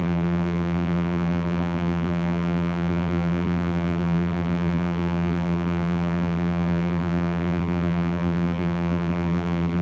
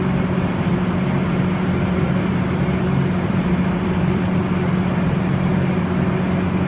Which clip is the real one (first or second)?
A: second